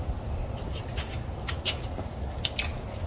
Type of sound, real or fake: real